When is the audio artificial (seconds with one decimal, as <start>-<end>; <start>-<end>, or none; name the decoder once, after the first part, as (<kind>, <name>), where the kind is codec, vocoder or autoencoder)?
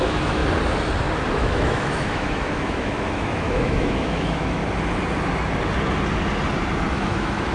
0.0-0.4 (autoencoder, DAC-VAE); 1.3-4.6; 6.9-7.5